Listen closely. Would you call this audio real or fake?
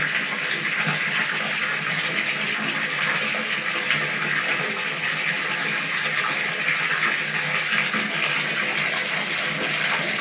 real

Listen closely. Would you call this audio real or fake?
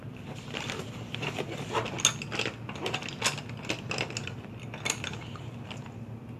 real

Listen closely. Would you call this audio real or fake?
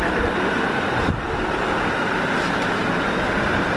real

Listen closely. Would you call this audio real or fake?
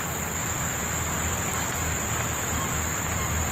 real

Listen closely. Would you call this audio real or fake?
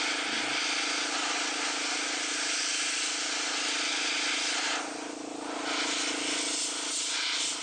real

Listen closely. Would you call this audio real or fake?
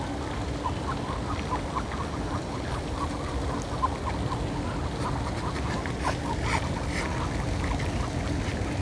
real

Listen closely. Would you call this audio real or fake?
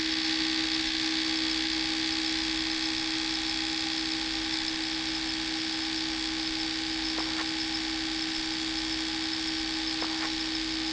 real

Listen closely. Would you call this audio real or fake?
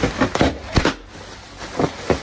real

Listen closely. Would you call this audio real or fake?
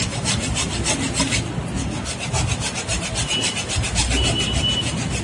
real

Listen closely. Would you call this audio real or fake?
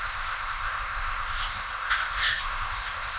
fake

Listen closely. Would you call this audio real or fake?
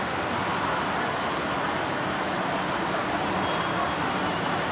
real